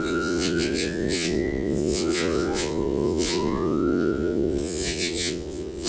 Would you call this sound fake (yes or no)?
yes